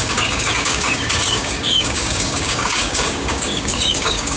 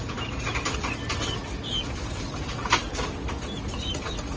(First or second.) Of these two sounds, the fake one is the first